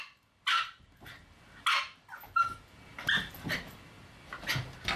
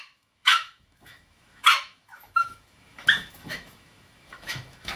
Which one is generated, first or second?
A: second